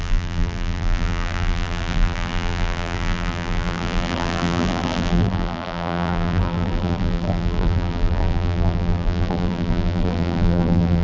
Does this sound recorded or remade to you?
remade